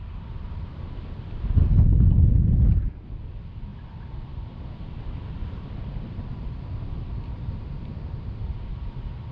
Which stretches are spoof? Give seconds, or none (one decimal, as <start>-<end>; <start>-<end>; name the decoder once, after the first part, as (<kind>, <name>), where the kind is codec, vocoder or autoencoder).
1.6-2.4 (codec, SNAC)